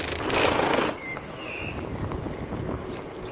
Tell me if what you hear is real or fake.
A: real